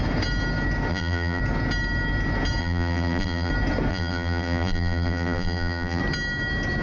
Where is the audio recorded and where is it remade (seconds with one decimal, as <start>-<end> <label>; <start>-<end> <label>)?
0.0-0.9 recorded; 0.9-1.4 remade; 1.4-2.6 recorded; 2.6-3.5 remade; 3.5-3.9 recorded; 3.9-6.0 remade; 6.0-6.8 recorded